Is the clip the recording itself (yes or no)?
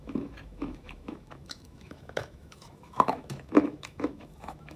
no